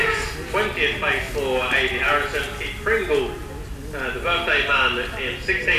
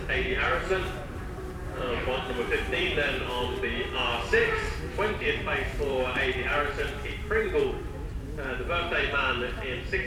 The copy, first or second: second